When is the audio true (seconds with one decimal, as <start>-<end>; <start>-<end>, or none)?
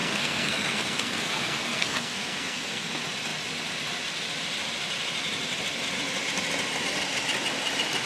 2.9-8.1